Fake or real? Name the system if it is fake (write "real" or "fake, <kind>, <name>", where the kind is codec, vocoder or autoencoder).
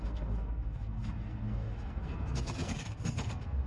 fake, codec, SNAC